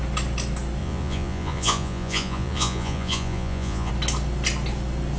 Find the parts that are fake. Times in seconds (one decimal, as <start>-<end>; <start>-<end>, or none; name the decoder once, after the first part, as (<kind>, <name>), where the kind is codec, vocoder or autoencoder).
0.8-3.9 (vocoder, Vocos)